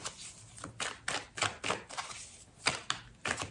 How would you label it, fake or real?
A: real